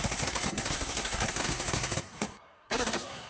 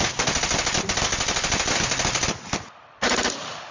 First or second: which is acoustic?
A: second